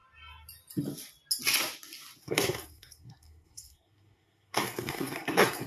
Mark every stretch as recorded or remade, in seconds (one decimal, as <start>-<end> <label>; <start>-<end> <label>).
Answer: 0.0-2.2 recorded; 2.2-5.7 remade

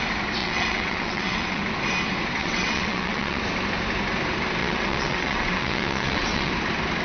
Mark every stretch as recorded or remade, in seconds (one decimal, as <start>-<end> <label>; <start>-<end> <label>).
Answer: 0.0-0.4 recorded; 0.4-1.6 remade; 1.6-2.4 recorded; 2.4-3.4 remade; 3.4-4.6 recorded; 4.6-6.5 remade; 6.5-7.0 recorded

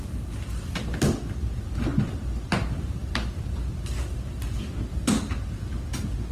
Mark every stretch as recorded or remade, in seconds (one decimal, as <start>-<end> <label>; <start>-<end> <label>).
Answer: 0.0-2.5 recorded; 2.5-4.4 remade; 4.4-6.3 recorded